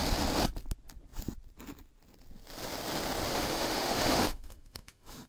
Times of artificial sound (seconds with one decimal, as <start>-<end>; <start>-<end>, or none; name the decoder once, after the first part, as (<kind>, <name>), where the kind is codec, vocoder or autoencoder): 3.3-5.3 (autoencoder, DAC-VAE)